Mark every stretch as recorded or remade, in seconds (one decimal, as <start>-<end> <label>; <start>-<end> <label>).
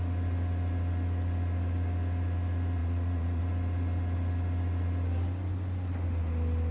0.0-2.8 recorded; 2.8-3.4 remade; 3.4-6.7 recorded